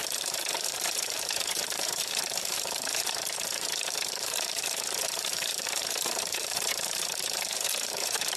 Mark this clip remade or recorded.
remade